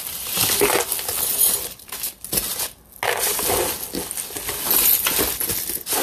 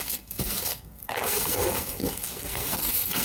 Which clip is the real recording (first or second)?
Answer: first